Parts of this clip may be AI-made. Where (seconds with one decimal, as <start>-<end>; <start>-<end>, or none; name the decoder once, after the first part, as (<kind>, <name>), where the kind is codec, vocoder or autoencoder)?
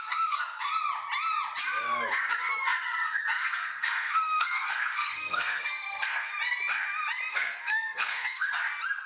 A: 0.0-0.7 (codec, SNAC); 2.3-6.3; 7.3-8.5